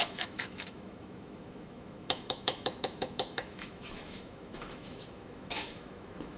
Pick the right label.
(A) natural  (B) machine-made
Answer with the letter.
B